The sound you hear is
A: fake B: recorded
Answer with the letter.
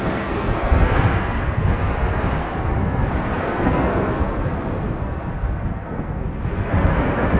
A